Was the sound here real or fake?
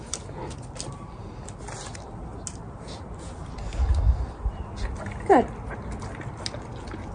real